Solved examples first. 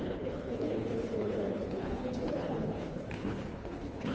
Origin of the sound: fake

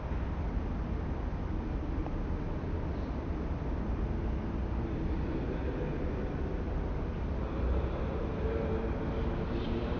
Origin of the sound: real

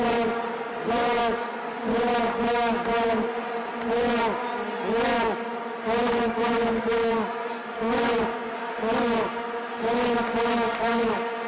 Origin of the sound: real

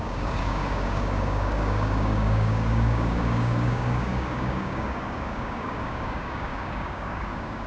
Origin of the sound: fake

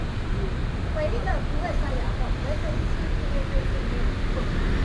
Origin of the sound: real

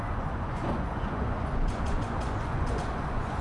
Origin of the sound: fake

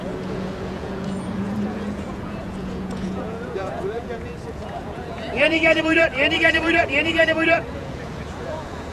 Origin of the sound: fake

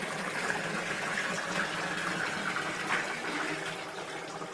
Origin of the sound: real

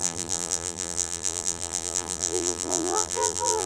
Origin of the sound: fake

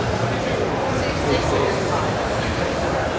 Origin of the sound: fake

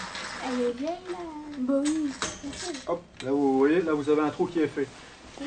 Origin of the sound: real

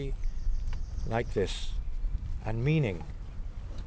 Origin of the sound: real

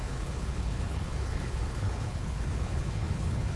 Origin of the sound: fake